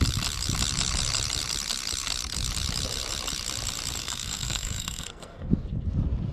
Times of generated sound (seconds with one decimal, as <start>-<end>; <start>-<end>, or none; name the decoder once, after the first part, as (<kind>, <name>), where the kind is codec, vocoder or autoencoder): 4.0-5.5 (codec, SNAC)